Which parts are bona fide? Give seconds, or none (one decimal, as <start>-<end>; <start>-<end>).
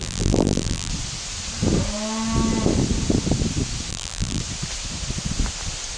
0.9-3.9; 4.4-6.0